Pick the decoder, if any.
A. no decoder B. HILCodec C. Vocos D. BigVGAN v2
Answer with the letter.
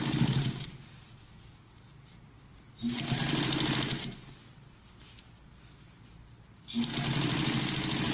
A